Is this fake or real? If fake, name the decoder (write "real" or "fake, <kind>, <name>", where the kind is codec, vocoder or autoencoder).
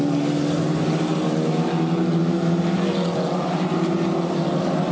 real